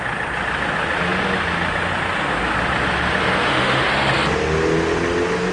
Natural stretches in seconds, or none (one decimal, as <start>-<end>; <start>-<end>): 0.0-3.4; 3.9-5.5